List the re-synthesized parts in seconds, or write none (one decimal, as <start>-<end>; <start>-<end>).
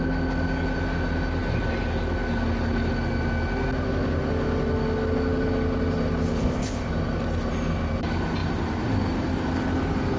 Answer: 6.4-6.9